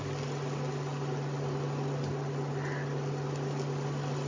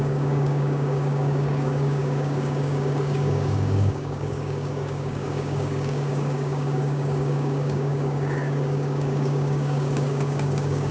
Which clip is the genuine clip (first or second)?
first